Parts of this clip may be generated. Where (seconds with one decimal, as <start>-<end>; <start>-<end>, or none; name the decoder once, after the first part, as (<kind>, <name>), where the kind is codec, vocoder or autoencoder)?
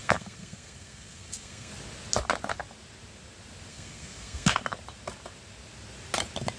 0.0-1.7 (codec, SNAC); 3.7-4.6